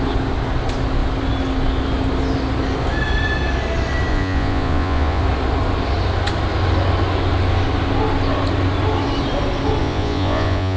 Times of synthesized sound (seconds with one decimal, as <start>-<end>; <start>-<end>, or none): 4.1-5.2; 9.8-10.8